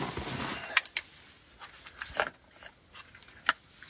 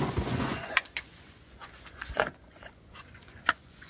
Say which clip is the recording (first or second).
first